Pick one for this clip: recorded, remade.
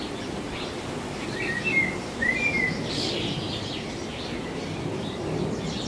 recorded